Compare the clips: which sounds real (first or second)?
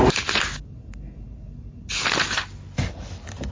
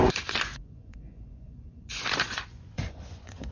first